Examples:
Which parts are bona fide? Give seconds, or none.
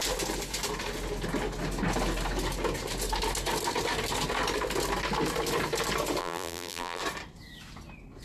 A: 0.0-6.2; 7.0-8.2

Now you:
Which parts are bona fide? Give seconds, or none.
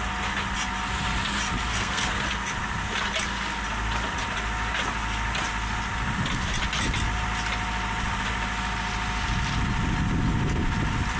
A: 0.0-1.7; 2.2-11.2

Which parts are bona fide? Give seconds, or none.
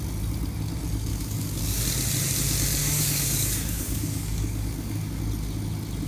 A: 0.0-1.1; 1.6-2.8; 5.2-6.1